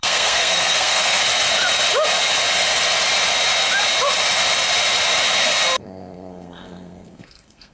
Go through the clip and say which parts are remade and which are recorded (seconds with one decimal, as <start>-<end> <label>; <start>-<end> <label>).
0.0-1.2 remade; 1.2-5.8 recorded; 5.8-7.7 remade